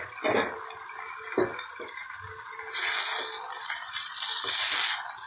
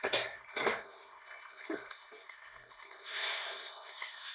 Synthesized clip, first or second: second